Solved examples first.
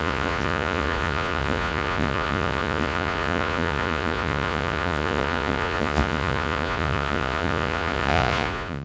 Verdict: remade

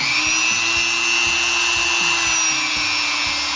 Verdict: recorded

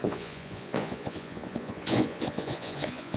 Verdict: remade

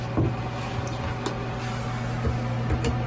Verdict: recorded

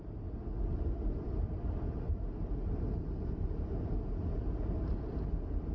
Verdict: recorded